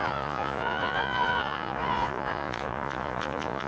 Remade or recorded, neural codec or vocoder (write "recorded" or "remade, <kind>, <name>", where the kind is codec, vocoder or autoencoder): remade, vocoder, Vocos